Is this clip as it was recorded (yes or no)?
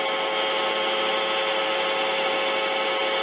yes